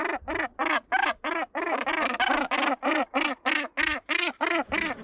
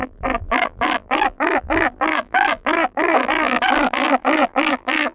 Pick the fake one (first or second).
second